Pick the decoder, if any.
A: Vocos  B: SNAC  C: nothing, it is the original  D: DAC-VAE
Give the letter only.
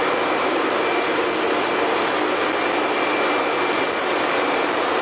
C